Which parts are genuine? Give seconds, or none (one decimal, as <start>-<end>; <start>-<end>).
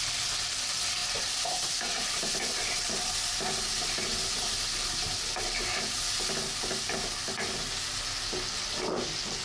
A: 0.0-1.0; 2.9-9.4